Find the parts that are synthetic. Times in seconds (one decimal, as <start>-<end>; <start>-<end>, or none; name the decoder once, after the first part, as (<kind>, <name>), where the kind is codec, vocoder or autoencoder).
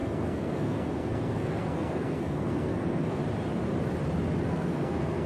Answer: 0.0-3.2 (codec, SNAC); 4.4-5.3